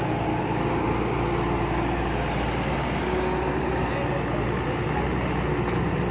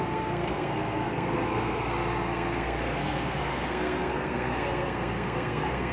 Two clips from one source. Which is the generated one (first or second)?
second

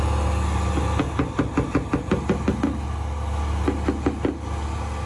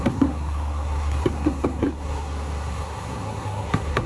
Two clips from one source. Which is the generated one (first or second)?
second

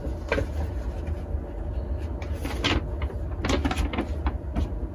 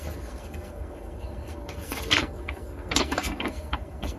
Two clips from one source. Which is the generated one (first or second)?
second